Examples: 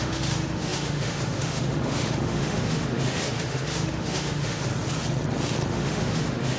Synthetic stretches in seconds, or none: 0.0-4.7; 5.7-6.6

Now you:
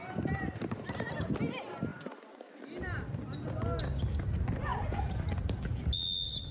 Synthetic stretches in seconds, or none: 1.9-3.4; 4.7-5.6

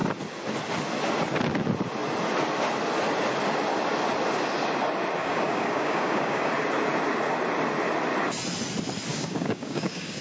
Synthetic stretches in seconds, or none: 5.2-6.5; 9.1-10.2

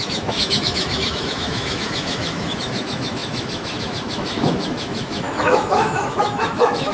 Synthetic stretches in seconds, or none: 0.0-6.9

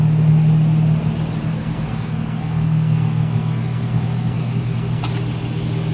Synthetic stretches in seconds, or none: 1.5-5.0

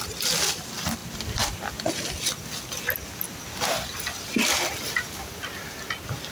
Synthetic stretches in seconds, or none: none

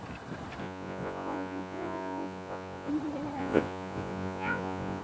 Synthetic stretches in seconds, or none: 0.6-2.9; 3.4-5.0